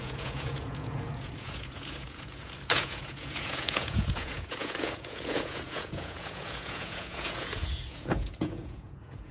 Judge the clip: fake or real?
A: fake